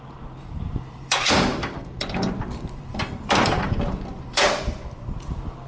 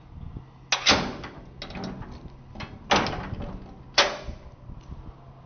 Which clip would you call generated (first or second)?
first